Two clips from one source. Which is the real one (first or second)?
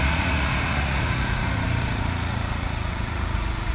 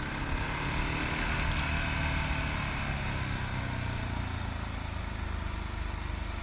second